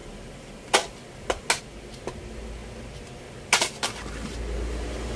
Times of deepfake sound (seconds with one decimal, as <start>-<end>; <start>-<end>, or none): none